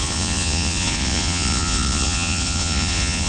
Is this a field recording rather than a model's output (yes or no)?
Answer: no